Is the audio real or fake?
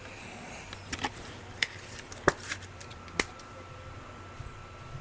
real